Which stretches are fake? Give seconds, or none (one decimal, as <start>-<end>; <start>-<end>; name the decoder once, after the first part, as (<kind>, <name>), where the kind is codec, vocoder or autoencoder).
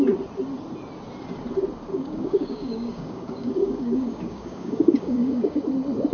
1.9-5.6 (codec, DAC)